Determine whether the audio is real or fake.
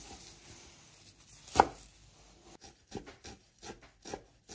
real